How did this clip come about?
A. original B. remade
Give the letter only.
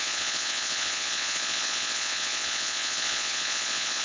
B